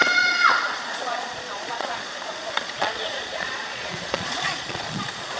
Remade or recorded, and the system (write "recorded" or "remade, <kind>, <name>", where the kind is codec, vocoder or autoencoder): remade, vocoder, Vocos